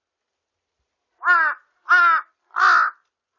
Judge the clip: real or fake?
real